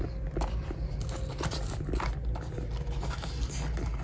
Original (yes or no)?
yes